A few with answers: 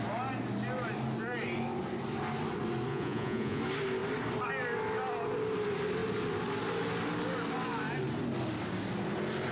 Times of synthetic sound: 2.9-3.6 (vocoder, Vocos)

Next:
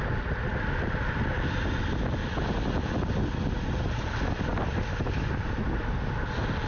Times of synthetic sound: none